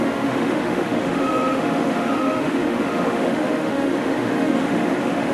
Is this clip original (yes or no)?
no